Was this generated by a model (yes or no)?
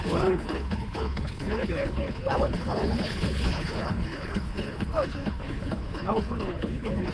yes